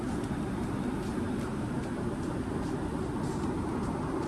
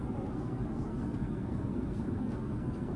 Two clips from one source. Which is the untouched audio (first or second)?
first